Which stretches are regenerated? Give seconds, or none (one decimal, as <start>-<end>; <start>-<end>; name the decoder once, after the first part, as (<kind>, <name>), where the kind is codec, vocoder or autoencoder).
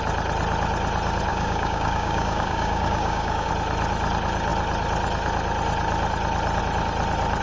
1.3-3.5 (codec, DAC)